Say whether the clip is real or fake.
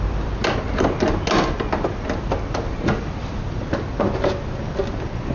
real